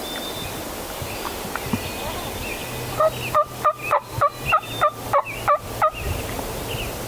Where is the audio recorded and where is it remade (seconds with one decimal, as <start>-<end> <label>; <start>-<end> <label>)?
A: 0.0-7.1 recorded